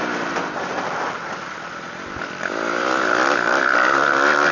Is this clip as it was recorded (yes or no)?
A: yes